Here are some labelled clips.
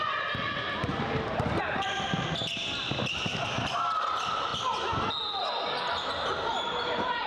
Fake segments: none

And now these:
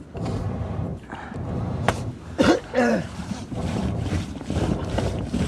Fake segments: 0.0-5.5 (vocoder, BigVGAN v2)

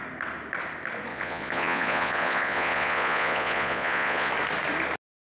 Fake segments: 1.1-4.3 (vocoder, Vocos)

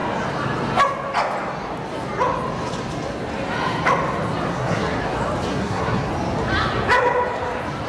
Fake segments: 4.5-5.0 (codec, SNAC); 5.5-6.1

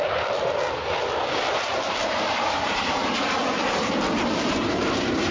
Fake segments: 2.0-5.3 (vocoder, BigVGAN v2)